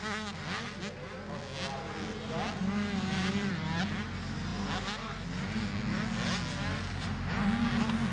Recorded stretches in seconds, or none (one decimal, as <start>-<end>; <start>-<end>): 0.0-3.1; 3.8-8.1